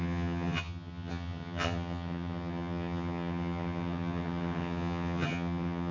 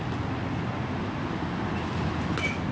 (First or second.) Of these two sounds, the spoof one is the first